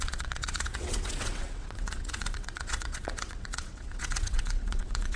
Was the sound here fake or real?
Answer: fake